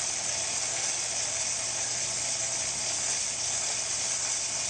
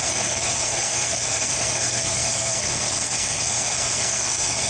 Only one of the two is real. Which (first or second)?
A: first